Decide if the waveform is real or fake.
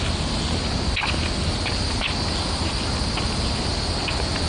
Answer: real